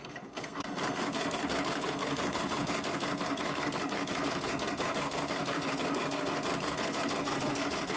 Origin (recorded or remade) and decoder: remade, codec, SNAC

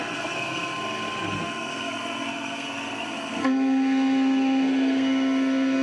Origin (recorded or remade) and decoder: remade, codec, SNAC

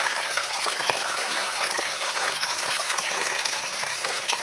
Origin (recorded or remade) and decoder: remade, codec, SNAC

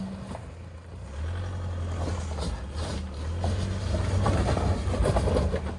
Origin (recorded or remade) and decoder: recorded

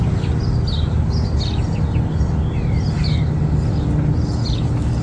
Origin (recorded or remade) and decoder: recorded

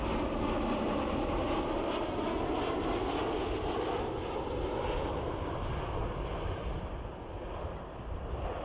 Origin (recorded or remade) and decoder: recorded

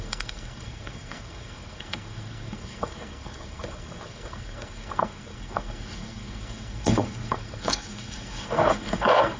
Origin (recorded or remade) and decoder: remade, codec, SNAC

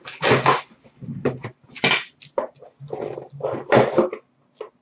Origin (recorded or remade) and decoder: recorded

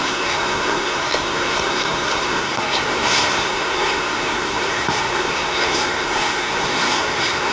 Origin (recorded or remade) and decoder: remade, codec, SNAC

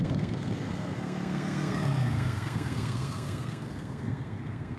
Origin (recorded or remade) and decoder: remade, codec, SNAC